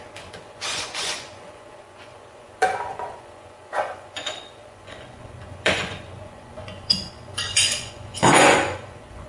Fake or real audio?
fake